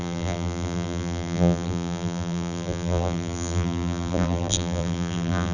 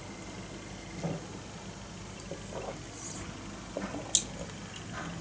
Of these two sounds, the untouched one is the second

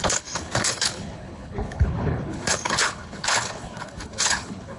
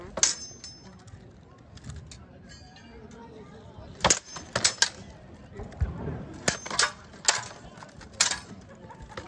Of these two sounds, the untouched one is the second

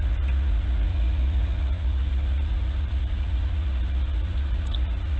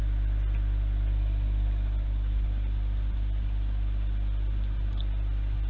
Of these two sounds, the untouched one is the second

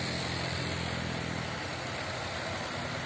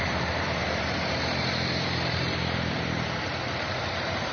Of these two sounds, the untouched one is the first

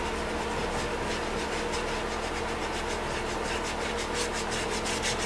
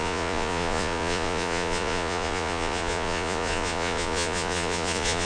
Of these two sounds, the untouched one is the first